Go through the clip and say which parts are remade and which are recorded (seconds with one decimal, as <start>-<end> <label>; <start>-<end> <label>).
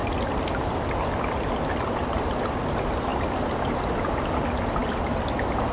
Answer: 0.0-5.7 recorded